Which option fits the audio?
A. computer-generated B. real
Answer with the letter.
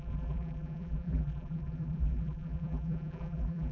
A